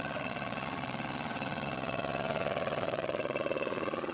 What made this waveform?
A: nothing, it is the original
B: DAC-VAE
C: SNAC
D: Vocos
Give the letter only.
D